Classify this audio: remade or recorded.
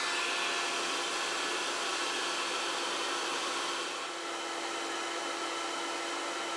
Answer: recorded